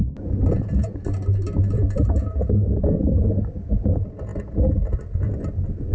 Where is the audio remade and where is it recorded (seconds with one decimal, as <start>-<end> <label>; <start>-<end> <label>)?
0.0-5.9 recorded